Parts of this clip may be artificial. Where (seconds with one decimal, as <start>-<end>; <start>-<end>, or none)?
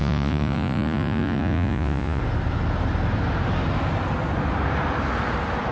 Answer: 0.0-2.2